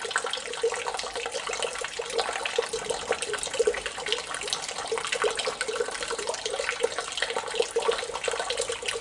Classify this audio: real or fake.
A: real